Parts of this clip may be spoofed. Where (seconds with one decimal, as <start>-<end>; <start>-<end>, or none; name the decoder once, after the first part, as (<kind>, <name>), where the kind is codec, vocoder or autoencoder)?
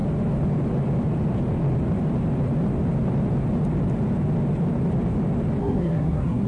5.6-6.5 (codec, SNAC)